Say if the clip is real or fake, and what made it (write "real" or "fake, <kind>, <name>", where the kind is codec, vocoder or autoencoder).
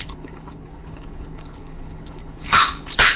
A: fake, codec, HILCodec